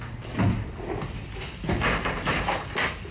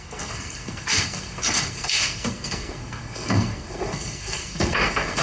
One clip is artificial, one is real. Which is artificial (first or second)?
second